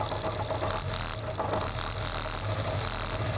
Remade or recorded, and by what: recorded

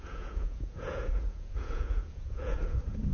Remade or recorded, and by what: remade, vocoder, Vocos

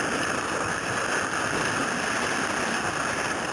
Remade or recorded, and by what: recorded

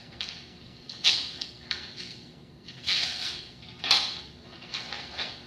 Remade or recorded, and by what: remade, codec, SNAC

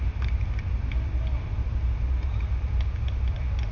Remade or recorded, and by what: recorded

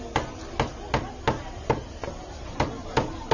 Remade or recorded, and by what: recorded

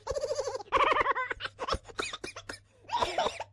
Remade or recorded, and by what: remade, vocoder, BigVGAN v2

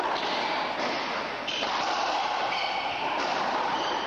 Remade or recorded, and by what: recorded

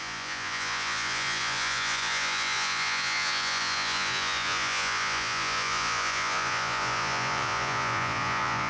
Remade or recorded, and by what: remade, vocoder, Vocos